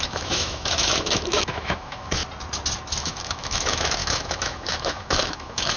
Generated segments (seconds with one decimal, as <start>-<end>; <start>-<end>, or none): 0.0-2.2; 3.0-5.8